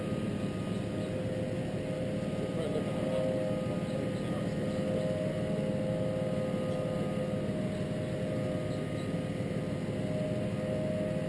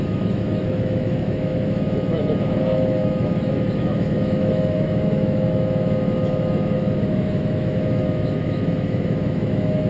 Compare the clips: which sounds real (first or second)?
first